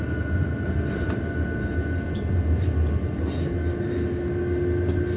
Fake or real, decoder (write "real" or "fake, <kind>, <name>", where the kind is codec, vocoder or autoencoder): real